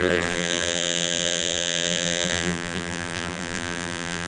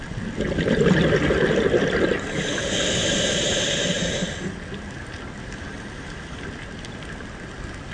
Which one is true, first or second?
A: second